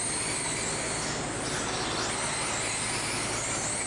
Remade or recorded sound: recorded